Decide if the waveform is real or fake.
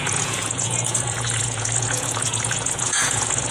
fake